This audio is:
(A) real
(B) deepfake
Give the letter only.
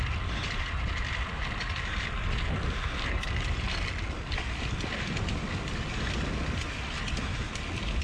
A